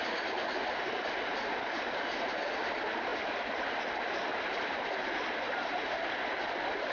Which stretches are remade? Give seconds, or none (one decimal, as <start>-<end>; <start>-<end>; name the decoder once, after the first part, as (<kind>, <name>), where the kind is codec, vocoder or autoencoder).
none